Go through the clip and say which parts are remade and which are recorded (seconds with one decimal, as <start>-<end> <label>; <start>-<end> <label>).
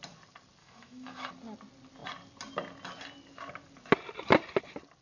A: 0.0-0.6 recorded; 0.6-1.3 remade; 1.3-5.0 recorded